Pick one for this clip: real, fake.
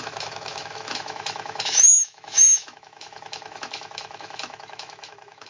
fake